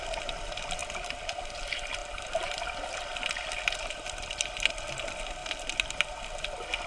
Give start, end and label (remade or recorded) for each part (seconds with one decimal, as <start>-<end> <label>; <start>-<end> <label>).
0.0-6.9 recorded